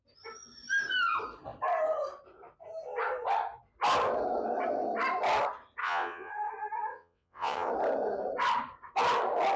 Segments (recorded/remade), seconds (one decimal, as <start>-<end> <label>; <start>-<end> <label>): 0.0-5.8 recorded; 5.8-6.3 remade; 6.3-6.9 recorded; 6.9-7.7 remade; 7.7-9.6 recorded